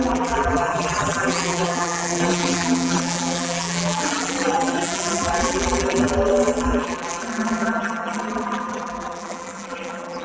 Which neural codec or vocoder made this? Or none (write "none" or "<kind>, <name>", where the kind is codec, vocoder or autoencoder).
vocoder, BigVGAN v2